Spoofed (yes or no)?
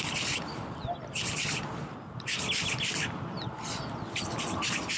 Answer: no